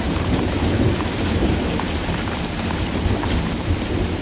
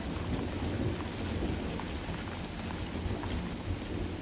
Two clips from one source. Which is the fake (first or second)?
first